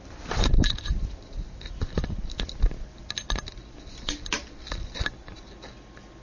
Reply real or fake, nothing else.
real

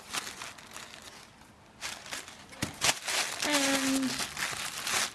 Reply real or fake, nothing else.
real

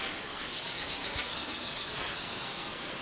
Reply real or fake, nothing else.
fake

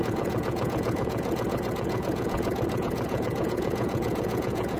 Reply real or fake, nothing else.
fake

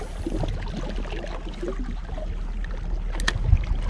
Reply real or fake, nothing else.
real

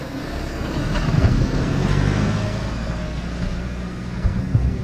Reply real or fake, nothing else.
fake